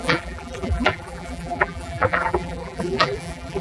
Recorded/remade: remade